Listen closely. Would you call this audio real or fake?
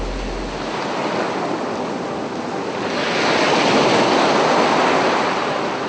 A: real